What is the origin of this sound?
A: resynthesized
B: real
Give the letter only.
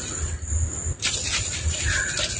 B